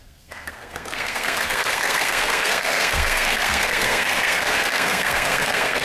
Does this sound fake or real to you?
fake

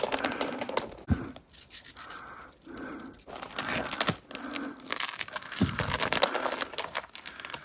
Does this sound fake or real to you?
real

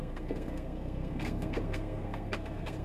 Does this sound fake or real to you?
fake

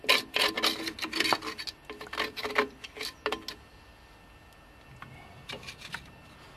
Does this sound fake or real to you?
real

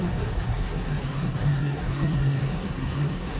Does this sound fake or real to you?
fake